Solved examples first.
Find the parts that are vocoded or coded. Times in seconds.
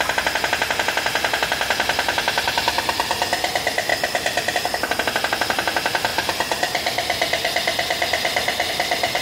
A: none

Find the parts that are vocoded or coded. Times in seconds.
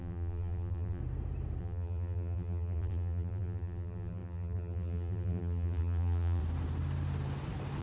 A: 0.0-1.0 (vocoder, BigVGAN v2); 1.6-6.4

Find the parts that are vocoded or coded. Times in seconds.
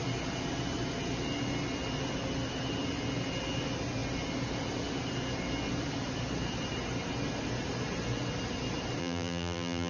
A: 9.0-9.9 (vocoder, BigVGAN v2)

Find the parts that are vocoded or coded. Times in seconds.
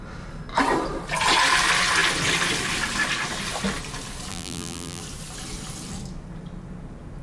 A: 4.3-5.0 (vocoder, BigVGAN v2)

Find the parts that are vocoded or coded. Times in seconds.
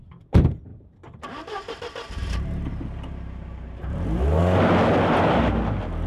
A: 0.7-4.4 (vocoder, BigVGAN v2)